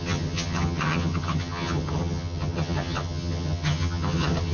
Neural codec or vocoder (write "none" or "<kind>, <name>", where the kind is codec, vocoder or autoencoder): vocoder, HiFi-GAN